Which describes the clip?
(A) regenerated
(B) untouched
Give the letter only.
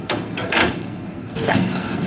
A